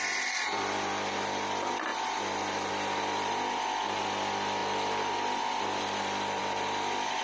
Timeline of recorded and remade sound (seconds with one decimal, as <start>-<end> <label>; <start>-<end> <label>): 0.0-7.2 recorded